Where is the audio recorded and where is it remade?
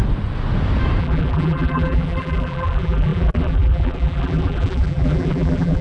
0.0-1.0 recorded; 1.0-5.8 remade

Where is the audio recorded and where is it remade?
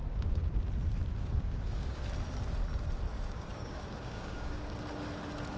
0.0-0.6 remade; 0.6-1.1 recorded; 1.1-2.0 remade; 2.0-3.1 recorded; 3.1-4.6 remade; 4.6-5.6 recorded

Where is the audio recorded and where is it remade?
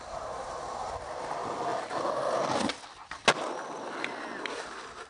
0.0-5.1 recorded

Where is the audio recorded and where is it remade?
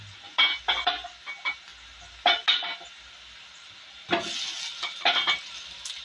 0.0-6.0 recorded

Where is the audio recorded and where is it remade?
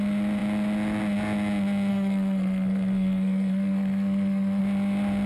0.0-1.9 recorded; 1.9-4.6 remade; 4.6-5.3 recorded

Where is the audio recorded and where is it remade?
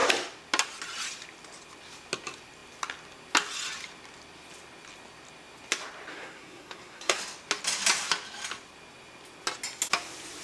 0.0-6.1 recorded; 6.1-7.2 remade; 7.2-10.4 recorded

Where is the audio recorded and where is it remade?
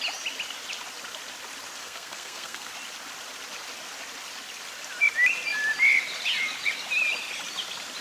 0.0-1.8 recorded; 1.8-2.7 remade; 2.7-8.0 recorded